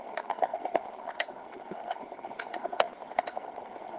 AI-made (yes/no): yes